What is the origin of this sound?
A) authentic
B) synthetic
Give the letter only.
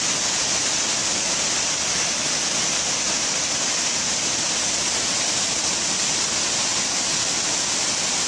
A